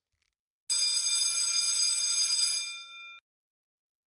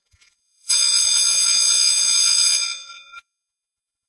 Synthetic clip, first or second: second